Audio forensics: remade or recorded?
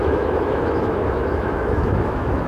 remade